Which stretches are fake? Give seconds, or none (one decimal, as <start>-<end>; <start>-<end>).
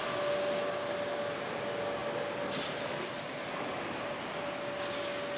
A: none